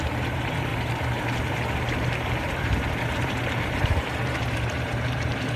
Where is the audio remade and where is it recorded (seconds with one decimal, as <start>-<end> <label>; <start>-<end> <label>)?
0.0-5.6 remade